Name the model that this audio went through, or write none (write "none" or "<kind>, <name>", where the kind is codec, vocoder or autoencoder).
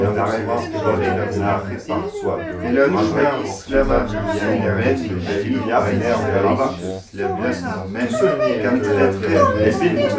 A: none